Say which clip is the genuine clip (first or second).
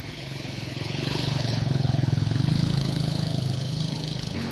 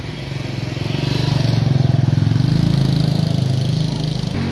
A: second